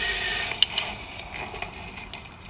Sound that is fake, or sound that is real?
real